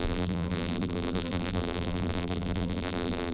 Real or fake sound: fake